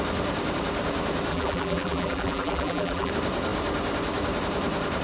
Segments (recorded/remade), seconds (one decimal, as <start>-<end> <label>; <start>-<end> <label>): 0.0-1.3 recorded; 1.3-3.1 remade; 3.1-5.0 recorded